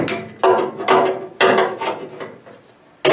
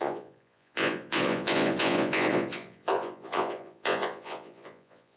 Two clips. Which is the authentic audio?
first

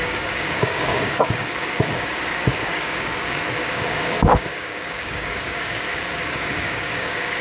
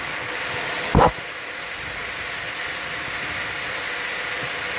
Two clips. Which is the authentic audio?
second